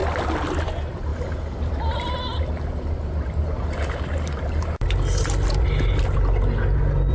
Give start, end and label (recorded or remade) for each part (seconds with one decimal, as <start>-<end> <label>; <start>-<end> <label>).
0.0-7.1 recorded